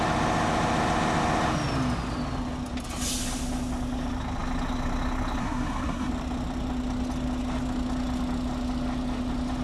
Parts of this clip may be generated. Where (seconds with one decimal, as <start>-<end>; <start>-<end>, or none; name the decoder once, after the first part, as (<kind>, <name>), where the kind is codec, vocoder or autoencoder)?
5.4-6.1 (codec, SNAC)